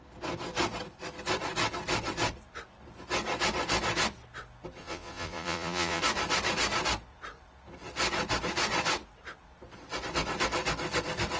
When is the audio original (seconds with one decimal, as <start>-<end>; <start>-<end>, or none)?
0.0-4.8; 6.0-11.4